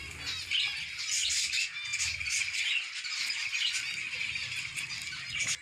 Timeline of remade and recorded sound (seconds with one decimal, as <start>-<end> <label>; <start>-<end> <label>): 0.0-5.6 recorded